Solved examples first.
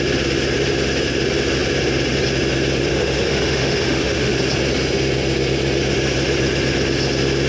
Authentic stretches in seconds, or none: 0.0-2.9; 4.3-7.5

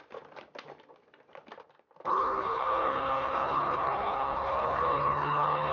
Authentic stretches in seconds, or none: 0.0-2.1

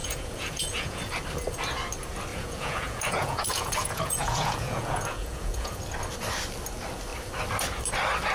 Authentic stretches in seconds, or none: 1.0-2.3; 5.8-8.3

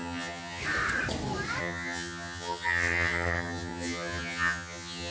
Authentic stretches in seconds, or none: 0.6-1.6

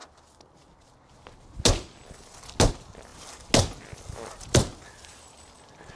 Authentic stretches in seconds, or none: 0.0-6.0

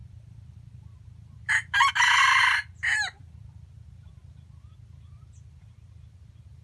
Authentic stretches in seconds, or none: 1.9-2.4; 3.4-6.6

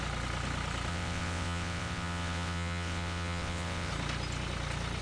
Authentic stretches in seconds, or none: 0.0-0.9; 3.9-5.0

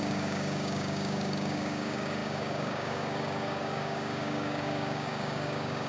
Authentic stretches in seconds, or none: none